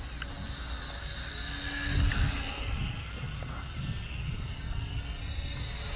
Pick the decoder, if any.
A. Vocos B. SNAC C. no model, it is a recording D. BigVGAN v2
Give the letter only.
C